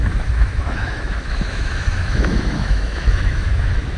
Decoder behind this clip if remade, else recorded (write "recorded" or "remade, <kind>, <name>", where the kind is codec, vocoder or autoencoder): remade, autoencoder, DAC-VAE